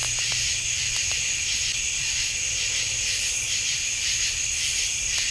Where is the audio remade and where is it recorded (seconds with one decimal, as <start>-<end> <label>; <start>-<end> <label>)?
0.0-1.2 remade; 1.2-1.7 recorded; 1.7-5.3 remade